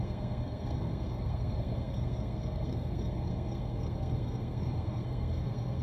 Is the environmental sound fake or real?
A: fake